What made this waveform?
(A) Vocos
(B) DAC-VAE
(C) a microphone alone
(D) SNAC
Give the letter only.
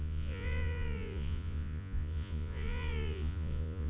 A